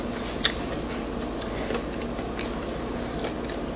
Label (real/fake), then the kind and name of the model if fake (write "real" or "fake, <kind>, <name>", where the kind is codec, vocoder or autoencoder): real